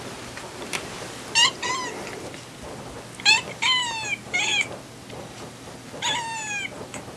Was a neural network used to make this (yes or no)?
no